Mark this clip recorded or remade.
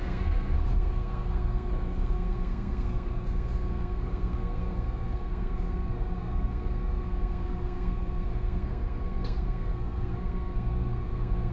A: remade